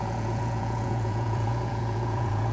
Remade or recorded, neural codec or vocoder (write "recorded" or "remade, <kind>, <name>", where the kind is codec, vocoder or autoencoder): remade, vocoder, Vocos